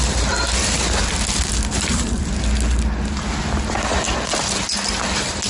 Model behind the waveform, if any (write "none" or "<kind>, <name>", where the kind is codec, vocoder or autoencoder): none